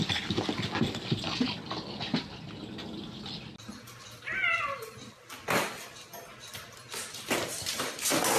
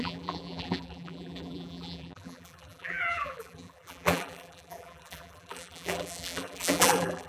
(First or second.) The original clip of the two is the first